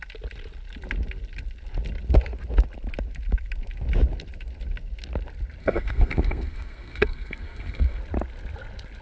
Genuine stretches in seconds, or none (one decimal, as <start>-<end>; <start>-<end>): 0.0-5.6; 8.0-9.0